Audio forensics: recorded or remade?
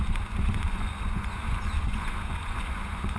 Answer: remade